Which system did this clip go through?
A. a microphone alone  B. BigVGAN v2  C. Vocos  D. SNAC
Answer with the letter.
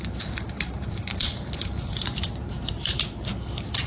B